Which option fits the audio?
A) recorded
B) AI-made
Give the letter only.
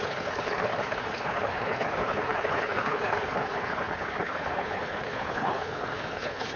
B